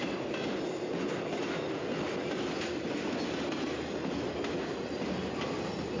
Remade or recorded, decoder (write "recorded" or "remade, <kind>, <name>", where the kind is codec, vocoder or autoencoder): recorded